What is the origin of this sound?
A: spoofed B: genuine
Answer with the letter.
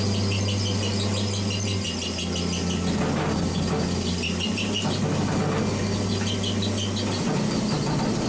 B